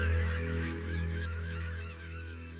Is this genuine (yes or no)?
no